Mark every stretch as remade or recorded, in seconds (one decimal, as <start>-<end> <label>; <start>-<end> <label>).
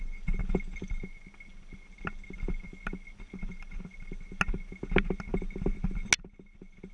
0.0-6.9 recorded